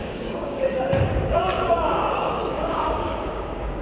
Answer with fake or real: fake